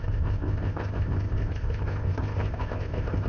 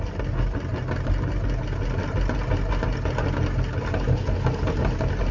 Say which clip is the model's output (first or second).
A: first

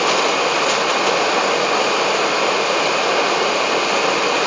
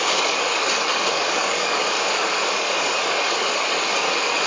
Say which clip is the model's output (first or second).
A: second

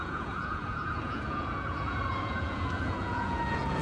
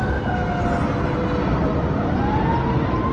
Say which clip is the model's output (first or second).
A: first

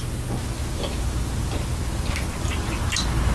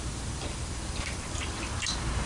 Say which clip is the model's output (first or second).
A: second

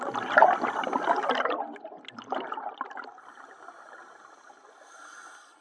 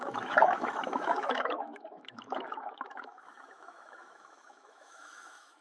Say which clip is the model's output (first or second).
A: second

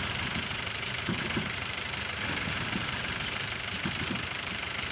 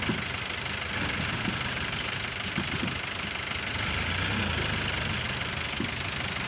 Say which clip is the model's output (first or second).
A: first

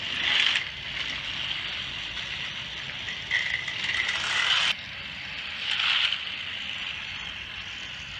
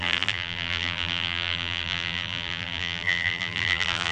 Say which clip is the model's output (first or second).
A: second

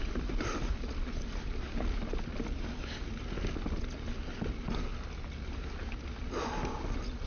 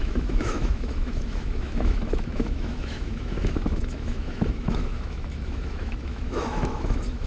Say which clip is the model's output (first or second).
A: second